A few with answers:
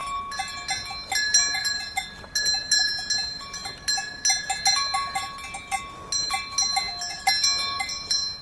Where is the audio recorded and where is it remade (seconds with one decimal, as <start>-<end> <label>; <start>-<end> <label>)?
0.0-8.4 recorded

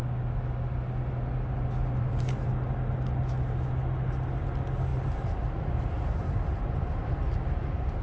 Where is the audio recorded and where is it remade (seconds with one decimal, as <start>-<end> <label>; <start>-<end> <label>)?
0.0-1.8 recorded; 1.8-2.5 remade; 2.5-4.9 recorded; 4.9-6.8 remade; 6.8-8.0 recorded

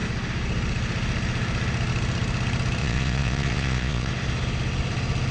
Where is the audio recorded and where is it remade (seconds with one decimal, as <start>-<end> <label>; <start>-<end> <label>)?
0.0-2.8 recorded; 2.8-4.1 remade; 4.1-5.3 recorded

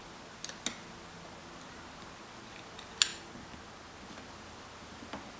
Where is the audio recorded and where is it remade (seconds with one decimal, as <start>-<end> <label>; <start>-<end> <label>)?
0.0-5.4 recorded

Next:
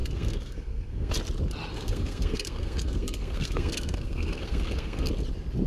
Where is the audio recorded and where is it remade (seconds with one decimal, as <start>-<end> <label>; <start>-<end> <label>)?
0.0-1.1 remade; 1.1-1.7 recorded; 1.7-5.1 remade; 5.1-5.7 recorded